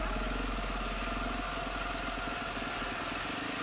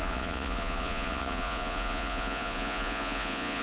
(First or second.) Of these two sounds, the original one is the first